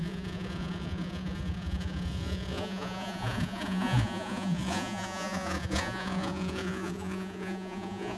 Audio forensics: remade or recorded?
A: remade